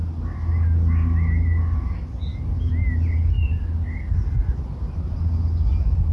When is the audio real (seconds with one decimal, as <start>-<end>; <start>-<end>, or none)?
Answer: 0.0-6.1